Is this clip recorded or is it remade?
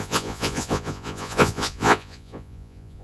remade